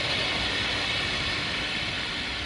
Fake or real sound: real